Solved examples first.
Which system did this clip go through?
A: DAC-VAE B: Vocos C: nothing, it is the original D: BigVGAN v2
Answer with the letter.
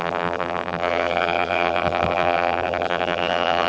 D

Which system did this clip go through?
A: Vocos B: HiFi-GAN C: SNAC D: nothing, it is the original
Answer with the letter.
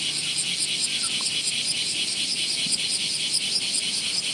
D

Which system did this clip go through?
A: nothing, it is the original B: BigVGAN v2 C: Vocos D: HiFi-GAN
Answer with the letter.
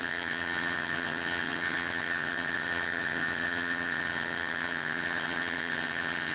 D